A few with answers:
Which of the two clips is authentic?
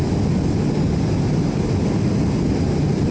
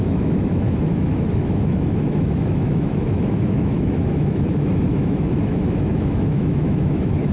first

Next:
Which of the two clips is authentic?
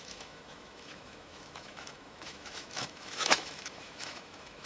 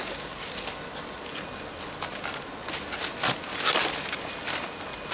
second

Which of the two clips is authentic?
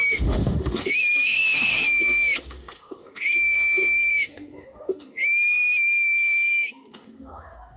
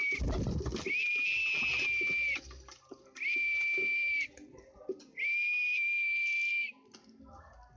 second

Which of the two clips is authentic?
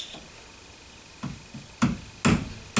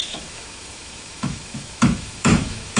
first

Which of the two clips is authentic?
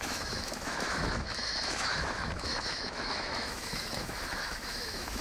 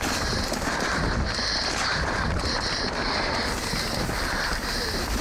second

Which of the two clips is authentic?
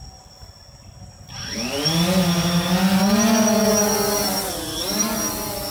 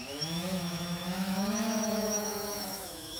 first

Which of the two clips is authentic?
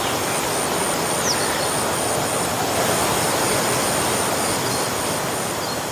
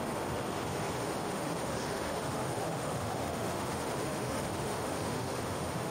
first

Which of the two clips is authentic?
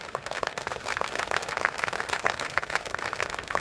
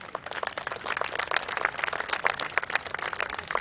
second